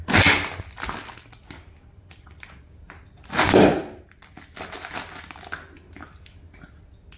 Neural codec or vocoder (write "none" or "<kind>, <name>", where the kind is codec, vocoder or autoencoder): none